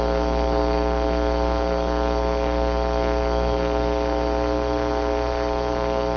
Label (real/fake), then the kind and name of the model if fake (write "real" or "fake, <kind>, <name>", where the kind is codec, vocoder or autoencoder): fake, codec, SNAC